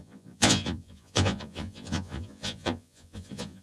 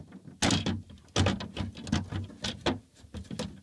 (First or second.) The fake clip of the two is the first